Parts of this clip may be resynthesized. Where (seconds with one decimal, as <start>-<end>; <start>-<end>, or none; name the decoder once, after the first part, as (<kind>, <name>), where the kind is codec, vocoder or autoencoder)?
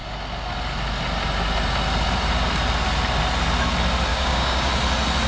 4.1-4.7 (codec, DAC)